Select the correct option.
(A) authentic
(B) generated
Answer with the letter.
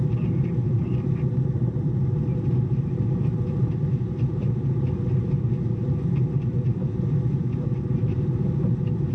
B